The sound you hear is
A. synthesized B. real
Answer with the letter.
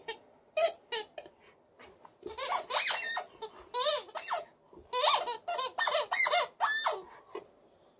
B